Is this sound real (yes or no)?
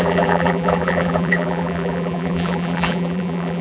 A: no